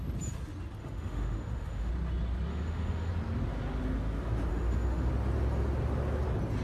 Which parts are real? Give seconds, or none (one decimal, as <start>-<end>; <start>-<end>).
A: 0.0-0.8; 1.9-2.5; 3.1-4.5; 5.1-6.6